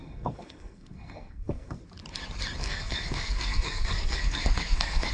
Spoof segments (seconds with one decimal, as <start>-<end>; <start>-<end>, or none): 0.0-1.8; 2.6-5.1